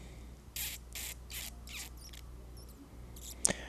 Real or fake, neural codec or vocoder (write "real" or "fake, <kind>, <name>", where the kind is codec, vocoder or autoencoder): real